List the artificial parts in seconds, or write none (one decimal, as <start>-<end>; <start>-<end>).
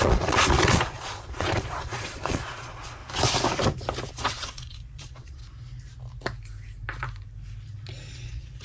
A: 0.0-3.0; 4.1-5.4; 8.1-8.6